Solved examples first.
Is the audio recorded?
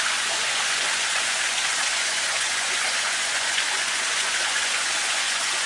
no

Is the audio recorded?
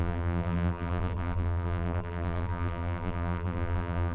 no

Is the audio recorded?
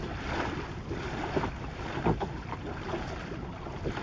yes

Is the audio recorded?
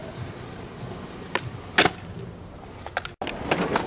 yes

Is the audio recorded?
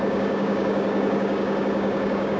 no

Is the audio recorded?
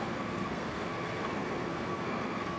no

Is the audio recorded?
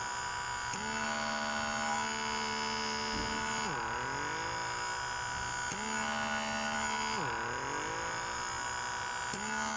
yes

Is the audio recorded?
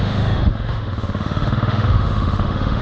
no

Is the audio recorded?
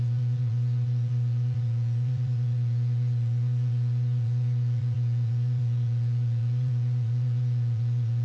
no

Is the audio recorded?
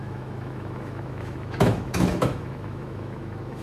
no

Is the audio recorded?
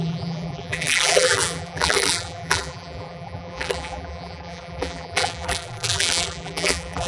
no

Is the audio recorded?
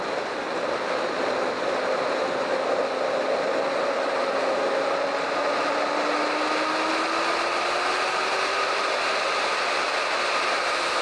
yes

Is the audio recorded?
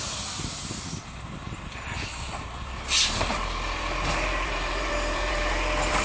no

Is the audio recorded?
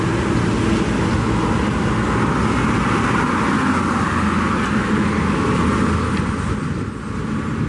yes